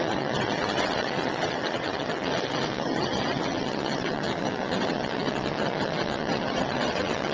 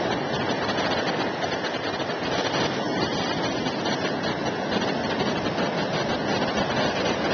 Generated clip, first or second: first